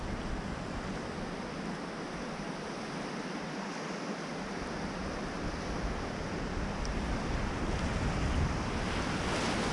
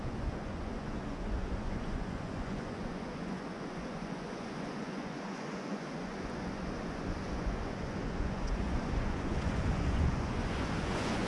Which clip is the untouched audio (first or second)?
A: first